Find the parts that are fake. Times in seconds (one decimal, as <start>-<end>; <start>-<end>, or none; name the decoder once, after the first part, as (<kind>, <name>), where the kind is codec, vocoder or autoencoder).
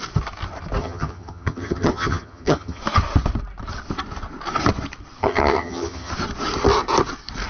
0.8-2.8 (vocoder, HiFi-GAN); 5.2-6.1